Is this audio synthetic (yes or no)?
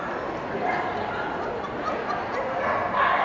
no